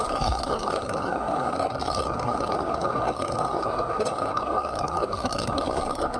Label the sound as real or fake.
fake